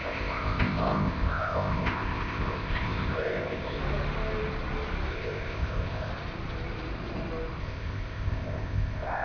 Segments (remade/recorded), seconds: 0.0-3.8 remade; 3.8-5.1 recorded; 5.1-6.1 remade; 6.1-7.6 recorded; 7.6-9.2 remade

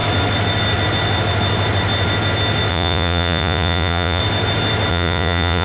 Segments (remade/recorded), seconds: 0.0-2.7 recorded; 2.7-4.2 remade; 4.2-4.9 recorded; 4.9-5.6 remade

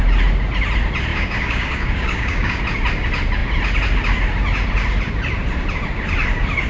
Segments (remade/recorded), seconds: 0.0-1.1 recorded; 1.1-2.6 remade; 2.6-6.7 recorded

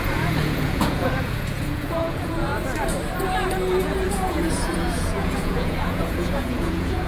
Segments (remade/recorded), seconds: 0.0-2.5 remade; 2.5-3.8 recorded; 3.8-7.1 remade